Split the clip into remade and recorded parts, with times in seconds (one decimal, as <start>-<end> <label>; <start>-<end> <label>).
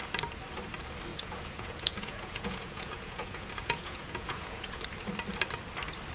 0.0-1.1 recorded; 1.1-4.8 remade; 4.8-6.1 recorded